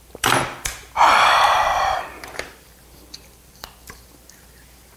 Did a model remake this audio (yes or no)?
yes